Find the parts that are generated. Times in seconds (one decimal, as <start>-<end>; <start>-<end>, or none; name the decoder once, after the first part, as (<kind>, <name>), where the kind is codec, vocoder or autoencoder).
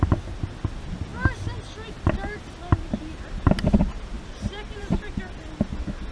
none